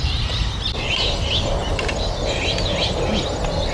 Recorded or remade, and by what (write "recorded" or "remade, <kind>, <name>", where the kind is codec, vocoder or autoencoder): recorded